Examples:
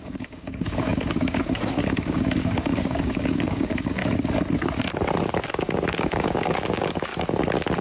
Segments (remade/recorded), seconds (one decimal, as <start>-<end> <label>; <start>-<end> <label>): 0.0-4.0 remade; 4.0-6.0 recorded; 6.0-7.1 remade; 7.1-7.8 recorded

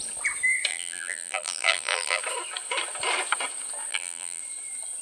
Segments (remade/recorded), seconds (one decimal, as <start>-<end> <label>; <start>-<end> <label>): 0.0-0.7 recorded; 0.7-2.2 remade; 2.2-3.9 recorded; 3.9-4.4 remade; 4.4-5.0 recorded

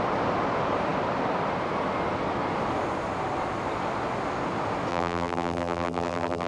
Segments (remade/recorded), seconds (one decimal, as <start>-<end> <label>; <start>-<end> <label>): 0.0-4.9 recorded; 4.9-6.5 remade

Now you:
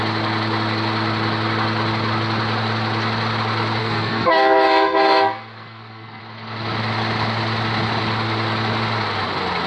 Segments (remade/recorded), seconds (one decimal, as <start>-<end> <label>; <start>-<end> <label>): 0.0-3.8 recorded; 3.8-6.2 remade; 6.2-9.7 recorded

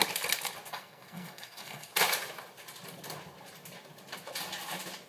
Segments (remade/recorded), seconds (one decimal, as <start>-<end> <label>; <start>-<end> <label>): 0.0-0.7 recorded; 0.7-1.9 remade; 1.9-5.1 recorded

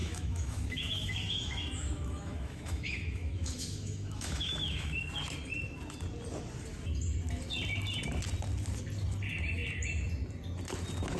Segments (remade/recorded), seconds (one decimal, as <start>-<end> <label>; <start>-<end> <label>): 0.0-5.0 remade; 5.0-11.2 recorded